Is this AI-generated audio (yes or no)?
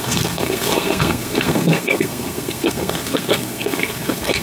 yes